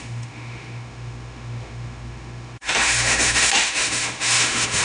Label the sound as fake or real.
fake